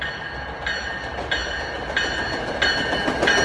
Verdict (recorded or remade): recorded